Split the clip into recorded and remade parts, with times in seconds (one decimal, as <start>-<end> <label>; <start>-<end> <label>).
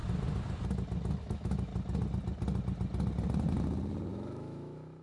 0.0-1.2 recorded; 1.2-1.7 remade; 1.7-4.1 recorded; 4.1-5.0 remade